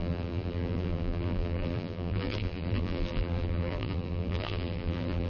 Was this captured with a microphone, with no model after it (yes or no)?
no